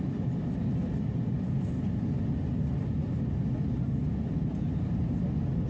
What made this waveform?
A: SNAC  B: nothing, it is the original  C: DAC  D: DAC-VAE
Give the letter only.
B